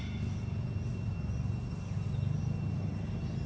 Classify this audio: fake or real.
real